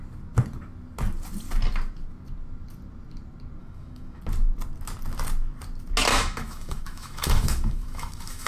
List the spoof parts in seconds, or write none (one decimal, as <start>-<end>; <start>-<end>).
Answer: 3.6-4.2; 6.1-8.5